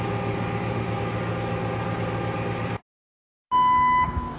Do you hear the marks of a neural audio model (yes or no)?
no